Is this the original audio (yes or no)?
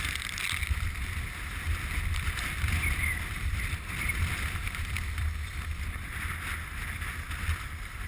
yes